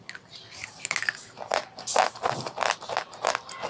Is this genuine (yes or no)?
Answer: yes